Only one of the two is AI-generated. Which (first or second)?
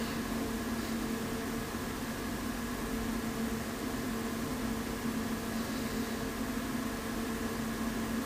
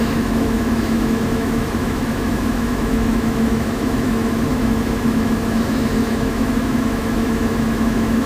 second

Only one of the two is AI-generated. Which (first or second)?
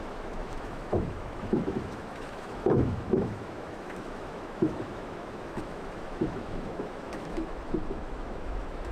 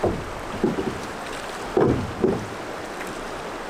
first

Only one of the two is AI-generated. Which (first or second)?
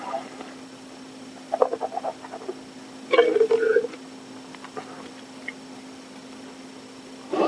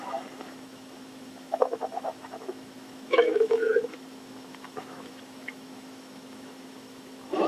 second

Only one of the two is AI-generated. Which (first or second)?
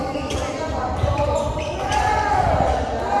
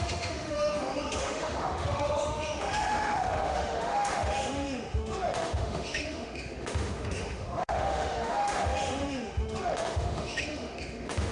second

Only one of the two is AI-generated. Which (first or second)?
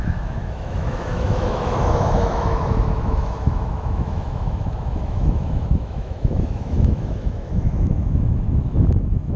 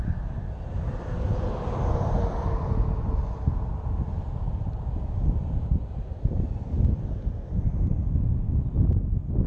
first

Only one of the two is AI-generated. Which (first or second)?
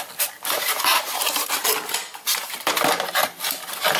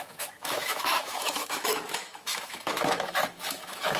second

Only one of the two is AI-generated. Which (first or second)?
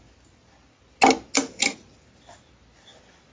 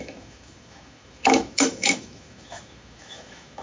second